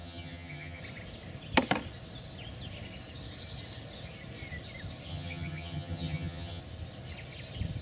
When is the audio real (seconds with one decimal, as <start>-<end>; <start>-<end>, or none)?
0.8-5.1; 6.6-7.8